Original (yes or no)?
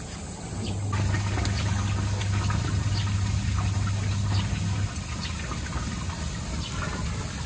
yes